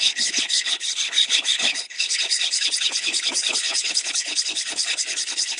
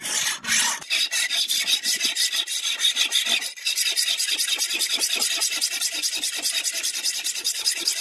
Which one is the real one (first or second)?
second